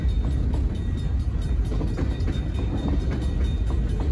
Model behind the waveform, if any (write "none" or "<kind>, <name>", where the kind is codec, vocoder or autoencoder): none